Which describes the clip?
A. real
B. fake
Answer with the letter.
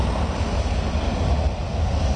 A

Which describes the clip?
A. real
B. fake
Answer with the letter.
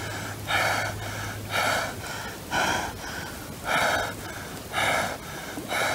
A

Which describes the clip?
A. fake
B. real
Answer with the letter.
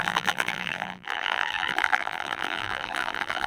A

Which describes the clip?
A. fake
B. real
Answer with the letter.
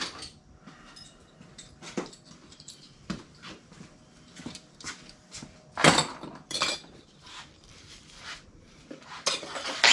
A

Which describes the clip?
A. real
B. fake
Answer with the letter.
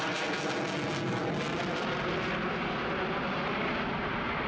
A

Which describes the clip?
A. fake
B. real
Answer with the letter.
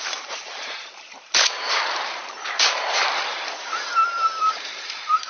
A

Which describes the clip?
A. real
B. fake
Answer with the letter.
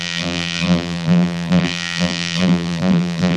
B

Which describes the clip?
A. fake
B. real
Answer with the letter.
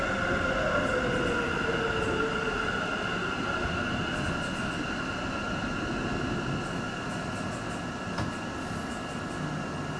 B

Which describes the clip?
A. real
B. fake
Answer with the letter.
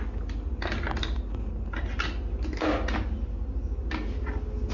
A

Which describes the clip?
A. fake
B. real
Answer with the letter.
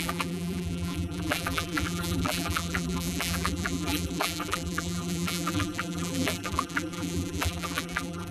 A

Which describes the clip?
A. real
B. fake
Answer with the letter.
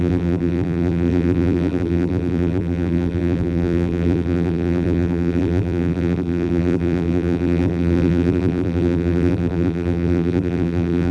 B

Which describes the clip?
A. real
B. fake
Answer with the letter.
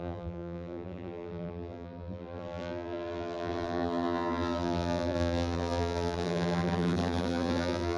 B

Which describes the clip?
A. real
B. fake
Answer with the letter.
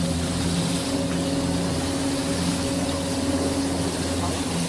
A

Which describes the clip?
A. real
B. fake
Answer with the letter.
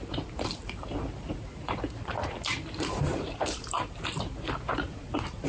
B